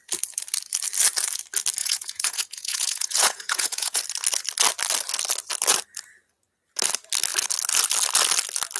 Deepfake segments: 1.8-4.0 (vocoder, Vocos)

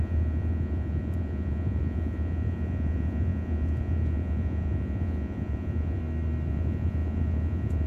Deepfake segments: 0.0-6.0 (vocoder, Vocos); 6.5-7.9

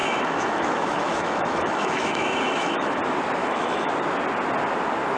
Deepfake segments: 0.0-3.0 (autoencoder, DAC-VAE); 3.4-3.9

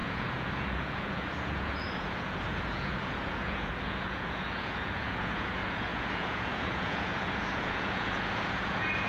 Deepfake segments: 0.0-9.1 (vocoder, Vocos)

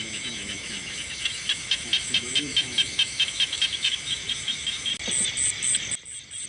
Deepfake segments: 0.0-4.9 (autoencoder, DAC-VAE)

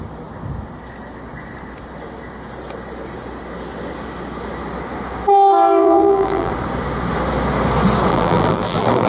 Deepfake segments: 5.8-6.5 (vocoder, BigVGAN v2); 8.1-9.1